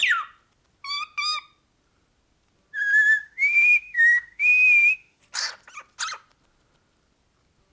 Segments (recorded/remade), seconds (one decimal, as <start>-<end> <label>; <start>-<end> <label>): 0.0-3.2 recorded; 3.2-5.2 remade; 5.2-7.7 recorded